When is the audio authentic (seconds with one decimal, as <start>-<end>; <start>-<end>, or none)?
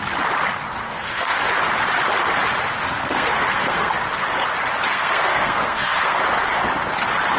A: 0.0-0.8; 1.4-2.8; 3.9-4.9; 6.2-7.4